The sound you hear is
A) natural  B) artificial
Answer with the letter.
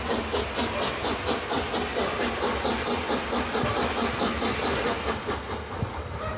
A